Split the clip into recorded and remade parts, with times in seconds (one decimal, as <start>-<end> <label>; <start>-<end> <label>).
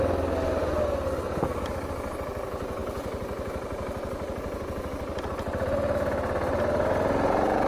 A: 0.0-7.7 recorded